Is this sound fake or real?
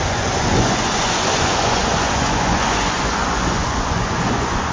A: fake